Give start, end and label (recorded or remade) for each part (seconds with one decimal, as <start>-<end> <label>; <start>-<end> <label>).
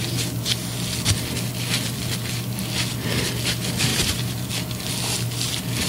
0.0-3.9 recorded; 3.9-4.5 remade; 4.5-5.9 recorded